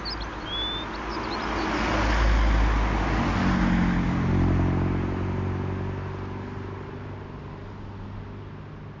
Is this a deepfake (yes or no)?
no